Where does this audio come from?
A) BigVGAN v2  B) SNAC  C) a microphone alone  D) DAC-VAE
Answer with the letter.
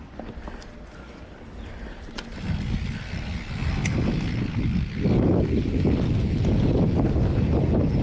C